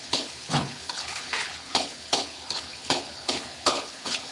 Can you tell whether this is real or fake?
fake